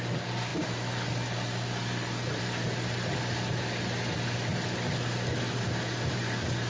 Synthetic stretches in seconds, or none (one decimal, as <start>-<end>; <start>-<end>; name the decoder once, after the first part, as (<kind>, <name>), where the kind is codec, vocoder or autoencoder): none